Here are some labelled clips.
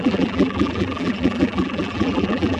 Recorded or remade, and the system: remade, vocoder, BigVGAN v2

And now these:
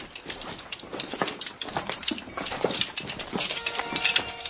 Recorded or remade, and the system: remade, vocoder, BigVGAN v2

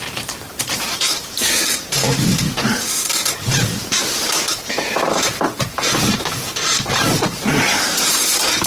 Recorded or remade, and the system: remade, vocoder, BigVGAN v2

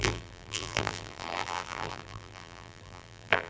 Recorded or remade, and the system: remade, vocoder, BigVGAN v2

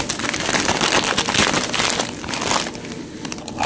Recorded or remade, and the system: remade, vocoder, BigVGAN v2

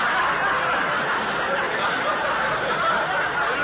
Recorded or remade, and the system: recorded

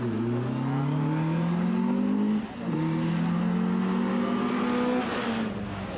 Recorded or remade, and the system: recorded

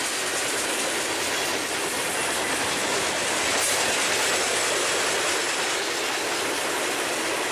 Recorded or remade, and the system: recorded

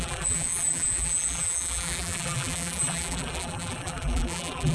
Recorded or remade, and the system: remade, vocoder, BigVGAN v2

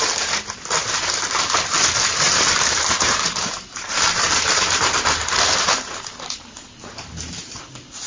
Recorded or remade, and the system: remade, vocoder, BigVGAN v2